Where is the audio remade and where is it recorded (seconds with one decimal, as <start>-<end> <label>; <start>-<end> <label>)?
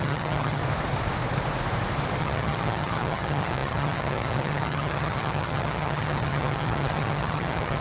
0.0-0.6 remade; 0.6-2.2 recorded; 2.2-7.8 remade